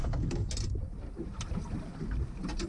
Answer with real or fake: real